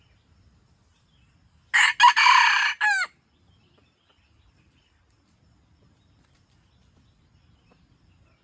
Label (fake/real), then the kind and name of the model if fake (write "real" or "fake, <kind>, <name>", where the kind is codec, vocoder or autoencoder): real